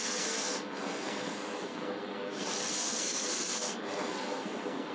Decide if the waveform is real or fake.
fake